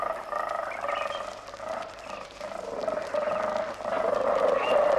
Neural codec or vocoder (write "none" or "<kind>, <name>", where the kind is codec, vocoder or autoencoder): none